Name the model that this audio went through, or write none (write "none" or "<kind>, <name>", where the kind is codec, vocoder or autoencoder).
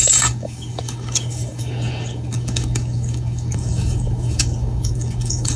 codec, DAC